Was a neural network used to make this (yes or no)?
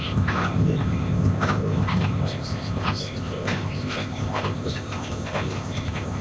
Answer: yes